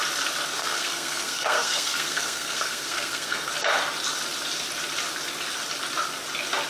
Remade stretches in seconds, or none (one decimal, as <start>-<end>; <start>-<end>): 0.6-3.5